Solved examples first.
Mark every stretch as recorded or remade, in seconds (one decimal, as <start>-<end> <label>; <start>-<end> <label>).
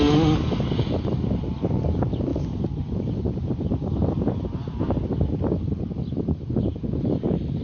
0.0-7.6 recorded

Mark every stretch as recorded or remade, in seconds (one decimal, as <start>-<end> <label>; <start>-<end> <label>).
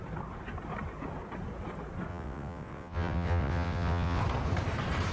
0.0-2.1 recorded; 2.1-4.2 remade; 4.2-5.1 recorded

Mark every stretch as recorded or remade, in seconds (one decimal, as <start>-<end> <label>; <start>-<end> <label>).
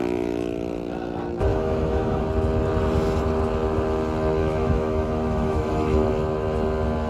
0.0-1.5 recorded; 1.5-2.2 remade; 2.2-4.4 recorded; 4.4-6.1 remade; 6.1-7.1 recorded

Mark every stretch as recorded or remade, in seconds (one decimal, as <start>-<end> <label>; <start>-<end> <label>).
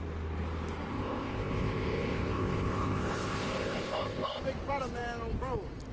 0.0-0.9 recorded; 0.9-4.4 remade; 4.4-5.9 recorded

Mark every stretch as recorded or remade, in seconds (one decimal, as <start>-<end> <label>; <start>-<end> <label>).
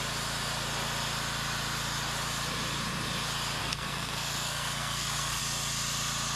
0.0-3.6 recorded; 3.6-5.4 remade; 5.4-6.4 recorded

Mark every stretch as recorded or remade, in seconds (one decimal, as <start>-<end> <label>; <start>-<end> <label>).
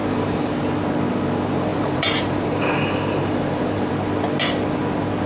0.0-0.5 remade; 0.5-1.7 recorded; 1.7-3.9 remade; 3.9-5.3 recorded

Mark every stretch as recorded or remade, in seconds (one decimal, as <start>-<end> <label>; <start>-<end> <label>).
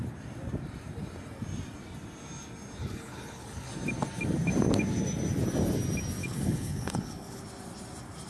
0.0-2.8 recorded; 2.8-3.7 remade; 3.7-6.2 recorded; 6.2-7.4 remade; 7.4-8.3 recorded